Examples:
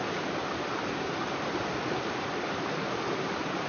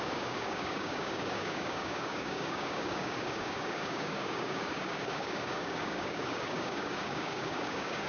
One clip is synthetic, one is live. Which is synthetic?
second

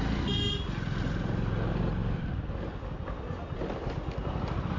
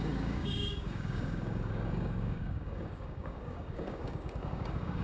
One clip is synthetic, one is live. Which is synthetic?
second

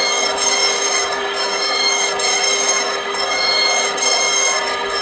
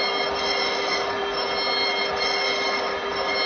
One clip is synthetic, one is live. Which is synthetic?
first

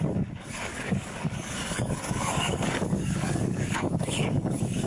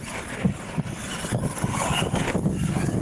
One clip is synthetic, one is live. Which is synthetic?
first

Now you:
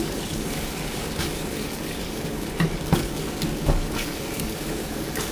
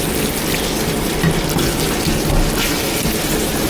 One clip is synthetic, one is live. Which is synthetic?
first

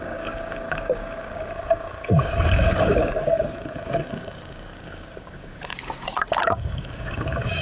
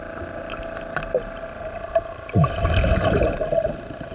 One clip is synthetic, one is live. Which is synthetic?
first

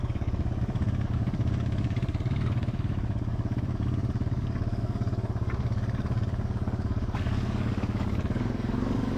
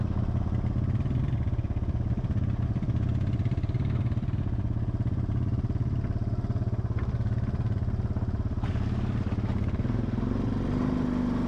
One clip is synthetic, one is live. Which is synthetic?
first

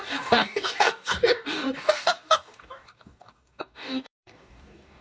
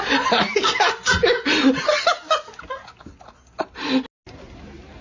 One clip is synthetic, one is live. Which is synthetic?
first